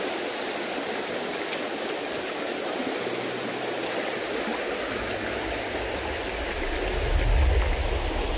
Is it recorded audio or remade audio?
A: recorded